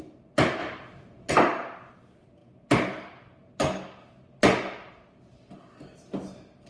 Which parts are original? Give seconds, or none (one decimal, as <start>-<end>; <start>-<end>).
0.0-0.6; 1.3-6.7